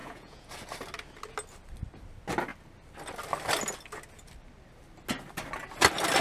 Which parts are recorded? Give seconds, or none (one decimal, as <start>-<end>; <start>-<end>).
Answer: 0.5-6.2